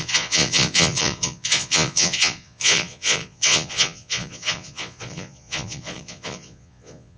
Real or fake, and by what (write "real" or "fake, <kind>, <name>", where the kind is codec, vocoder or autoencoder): fake, vocoder, Vocos